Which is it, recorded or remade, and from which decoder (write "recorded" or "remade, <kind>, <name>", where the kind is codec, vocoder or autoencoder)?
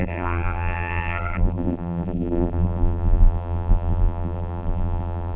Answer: remade, vocoder, BigVGAN v2